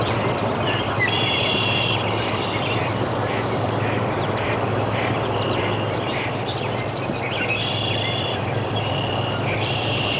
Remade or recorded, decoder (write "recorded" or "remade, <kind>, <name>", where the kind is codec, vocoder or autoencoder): remade, vocoder, BigVGAN v2